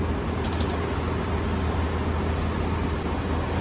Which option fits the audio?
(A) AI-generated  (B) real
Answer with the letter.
B